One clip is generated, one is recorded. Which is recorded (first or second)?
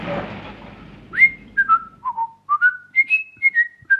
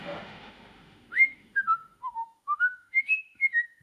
first